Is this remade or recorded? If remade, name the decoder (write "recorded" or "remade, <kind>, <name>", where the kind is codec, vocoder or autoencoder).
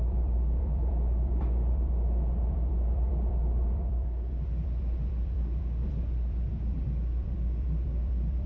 remade, vocoder, BigVGAN v2